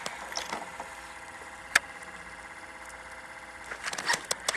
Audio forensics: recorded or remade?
recorded